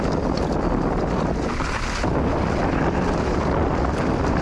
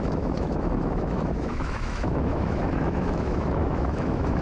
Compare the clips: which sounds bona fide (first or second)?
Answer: first